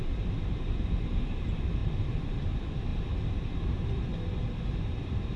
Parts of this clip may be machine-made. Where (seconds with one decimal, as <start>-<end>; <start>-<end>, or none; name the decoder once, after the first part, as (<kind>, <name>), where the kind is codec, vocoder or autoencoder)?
0.0-2.9 (vocoder, BigVGAN v2); 3.4-4.1; 5.0-5.4